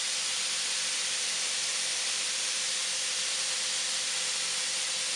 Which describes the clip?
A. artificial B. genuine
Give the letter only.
A